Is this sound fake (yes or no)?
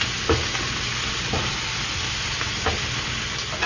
no